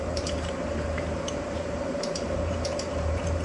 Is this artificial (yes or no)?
yes